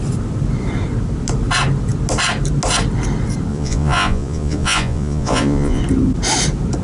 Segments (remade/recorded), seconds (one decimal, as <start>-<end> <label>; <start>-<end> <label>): 0.0-3.5 recorded; 3.5-5.8 remade; 5.8-6.8 recorded